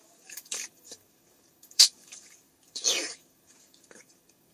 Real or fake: fake